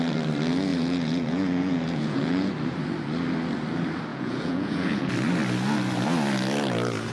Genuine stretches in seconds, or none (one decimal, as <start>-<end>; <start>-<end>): 0.0-0.7; 2.5-4.1; 5.1-7.1